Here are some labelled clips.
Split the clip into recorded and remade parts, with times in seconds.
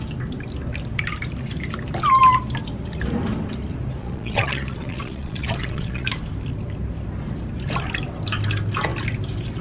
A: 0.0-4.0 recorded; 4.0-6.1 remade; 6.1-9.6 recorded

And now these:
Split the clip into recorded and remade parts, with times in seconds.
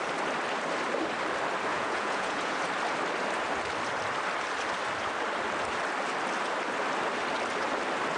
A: 0.0-1.7 recorded; 1.7-2.6 remade; 2.6-8.2 recorded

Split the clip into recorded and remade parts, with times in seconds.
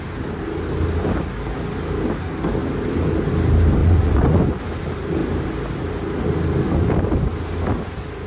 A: 0.0-3.8 recorded; 3.8-4.4 remade; 4.4-8.3 recorded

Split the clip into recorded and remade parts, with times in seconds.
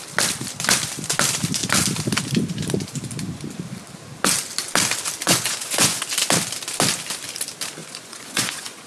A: 0.0-5.2 recorded; 5.2-6.0 remade; 6.0-7.8 recorded; 7.8-8.9 remade